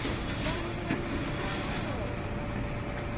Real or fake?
real